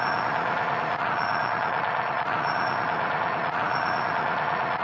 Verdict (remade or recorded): remade